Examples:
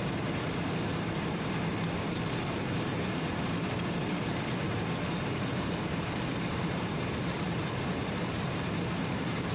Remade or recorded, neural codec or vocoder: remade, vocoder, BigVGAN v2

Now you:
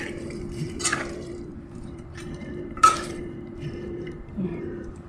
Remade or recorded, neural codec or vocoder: remade, vocoder, BigVGAN v2